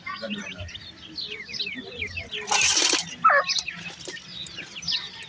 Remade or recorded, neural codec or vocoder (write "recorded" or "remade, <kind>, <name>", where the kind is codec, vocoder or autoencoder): recorded